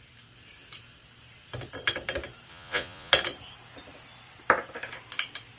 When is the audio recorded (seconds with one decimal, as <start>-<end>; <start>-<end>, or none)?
0.0-2.5; 3.1-5.6